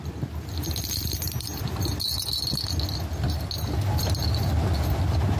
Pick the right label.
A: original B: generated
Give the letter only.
A